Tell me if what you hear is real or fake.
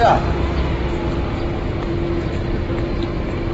real